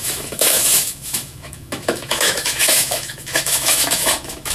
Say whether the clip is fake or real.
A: fake